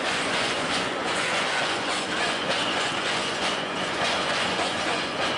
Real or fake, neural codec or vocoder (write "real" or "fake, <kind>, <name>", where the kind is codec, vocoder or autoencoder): fake, vocoder, Vocos